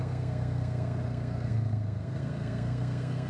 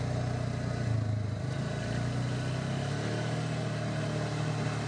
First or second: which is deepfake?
first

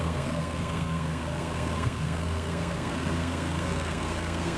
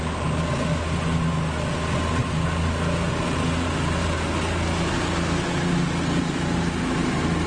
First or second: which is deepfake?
first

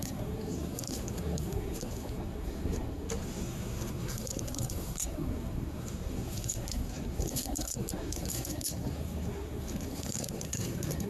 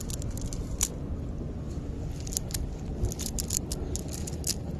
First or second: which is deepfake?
first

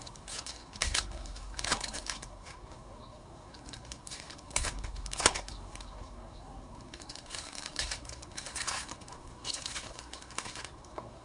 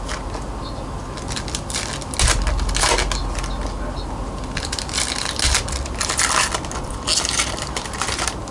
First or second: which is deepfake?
first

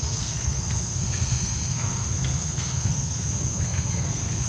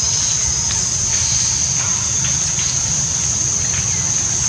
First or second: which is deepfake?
first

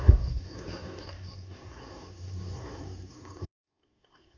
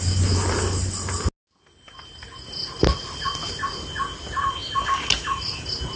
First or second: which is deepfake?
first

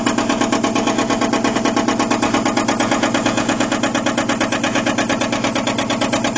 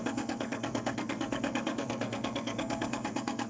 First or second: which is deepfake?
second